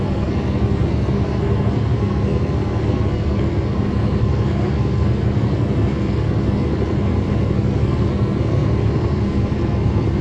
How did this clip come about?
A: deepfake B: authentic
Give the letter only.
A